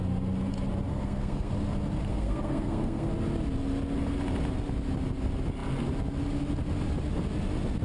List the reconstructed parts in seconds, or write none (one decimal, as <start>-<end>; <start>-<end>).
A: 0.9-1.5; 2.1-3.1